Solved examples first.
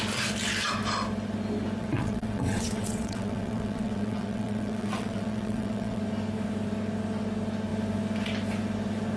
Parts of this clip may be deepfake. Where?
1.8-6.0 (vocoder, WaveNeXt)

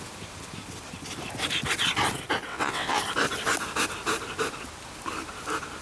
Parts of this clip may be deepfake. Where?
2.5-3.0 (vocoder, WaveNeXt)

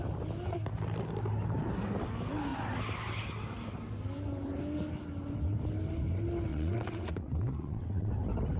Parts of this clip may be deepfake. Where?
6.5-8.1 (vocoder, WaveNeXt)